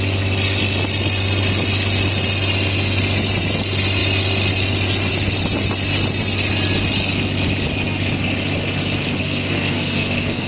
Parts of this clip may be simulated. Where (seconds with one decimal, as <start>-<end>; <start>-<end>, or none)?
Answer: 9.2-10.5